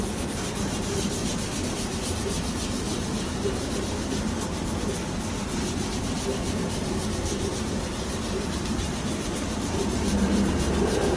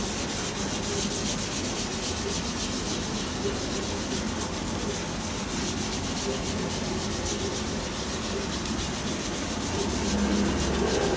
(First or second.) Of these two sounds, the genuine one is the second